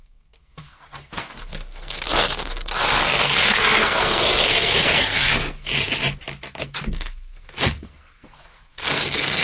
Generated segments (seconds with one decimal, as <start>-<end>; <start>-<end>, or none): 0.0-5.7; 6.6-9.4